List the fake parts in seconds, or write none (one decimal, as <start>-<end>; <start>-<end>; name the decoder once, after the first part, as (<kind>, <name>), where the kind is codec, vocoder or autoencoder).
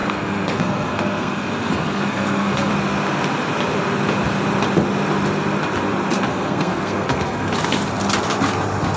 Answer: 0.0-2.7 (codec, SNAC); 6.3-7.5